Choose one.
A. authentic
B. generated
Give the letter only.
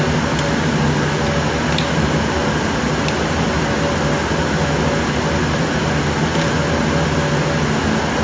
A